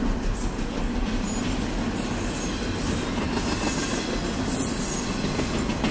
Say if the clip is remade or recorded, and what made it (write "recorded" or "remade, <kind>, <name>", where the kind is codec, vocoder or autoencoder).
recorded